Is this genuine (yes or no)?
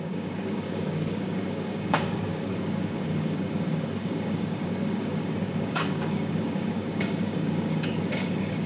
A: no